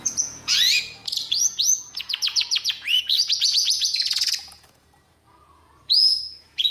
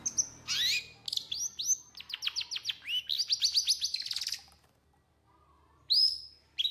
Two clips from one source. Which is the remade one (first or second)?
first